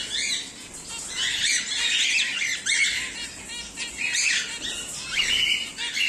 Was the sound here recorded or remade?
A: recorded